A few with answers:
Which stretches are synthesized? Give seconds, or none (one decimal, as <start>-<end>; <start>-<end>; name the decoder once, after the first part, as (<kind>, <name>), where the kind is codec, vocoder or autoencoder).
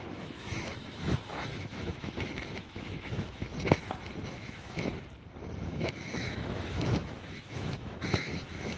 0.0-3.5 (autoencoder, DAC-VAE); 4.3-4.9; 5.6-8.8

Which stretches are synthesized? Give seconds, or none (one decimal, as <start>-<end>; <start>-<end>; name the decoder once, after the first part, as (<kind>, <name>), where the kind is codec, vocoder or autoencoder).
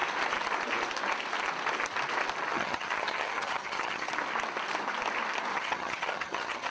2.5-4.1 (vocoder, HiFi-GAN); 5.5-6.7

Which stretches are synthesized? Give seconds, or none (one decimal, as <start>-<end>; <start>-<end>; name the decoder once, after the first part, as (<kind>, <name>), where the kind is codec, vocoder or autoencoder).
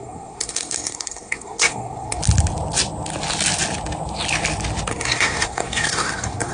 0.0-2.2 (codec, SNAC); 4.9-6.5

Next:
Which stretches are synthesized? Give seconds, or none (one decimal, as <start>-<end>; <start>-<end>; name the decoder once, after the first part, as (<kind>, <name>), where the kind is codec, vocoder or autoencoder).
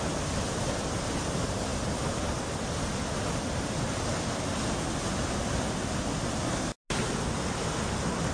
none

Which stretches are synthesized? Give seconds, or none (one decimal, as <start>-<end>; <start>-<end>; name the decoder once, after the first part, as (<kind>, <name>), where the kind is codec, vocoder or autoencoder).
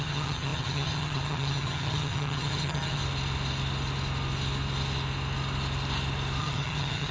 0.0-3.0 (vocoder, HiFi-GAN); 6.4-7.1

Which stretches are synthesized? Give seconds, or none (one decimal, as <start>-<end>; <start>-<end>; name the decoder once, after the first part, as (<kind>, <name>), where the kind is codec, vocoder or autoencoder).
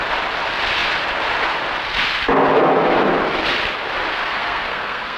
4.1-5.2 (codec, SNAC)